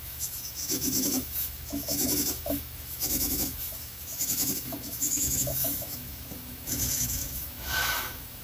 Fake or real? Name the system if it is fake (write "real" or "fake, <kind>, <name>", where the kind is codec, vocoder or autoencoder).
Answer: fake, autoencoder, DAC-VAE